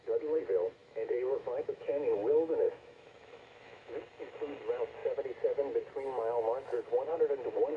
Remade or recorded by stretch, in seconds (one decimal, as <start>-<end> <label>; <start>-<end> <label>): 0.0-0.8 recorded; 0.8-4.0 remade; 4.0-7.8 recorded